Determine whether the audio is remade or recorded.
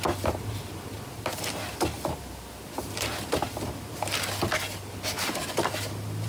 recorded